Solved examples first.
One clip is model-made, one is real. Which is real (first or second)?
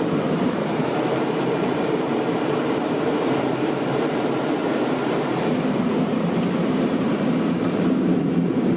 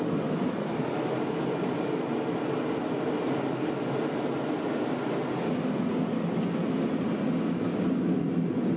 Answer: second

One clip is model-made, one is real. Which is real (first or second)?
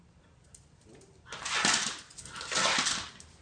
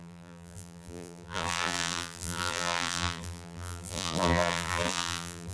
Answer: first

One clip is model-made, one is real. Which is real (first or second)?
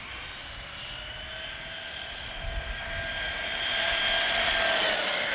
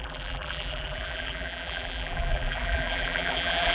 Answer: first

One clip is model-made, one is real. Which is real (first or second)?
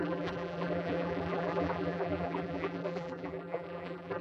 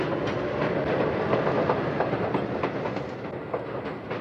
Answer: second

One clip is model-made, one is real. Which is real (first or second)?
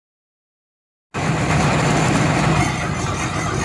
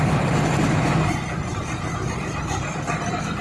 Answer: first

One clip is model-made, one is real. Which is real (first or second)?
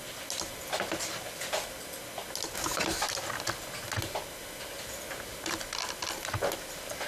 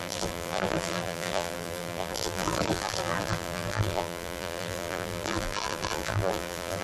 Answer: first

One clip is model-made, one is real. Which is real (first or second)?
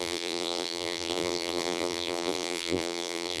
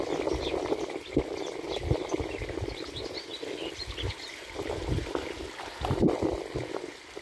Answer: second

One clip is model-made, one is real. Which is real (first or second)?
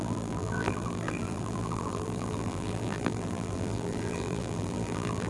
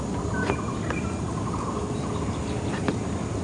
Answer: second